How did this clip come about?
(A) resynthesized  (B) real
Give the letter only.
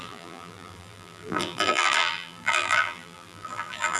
A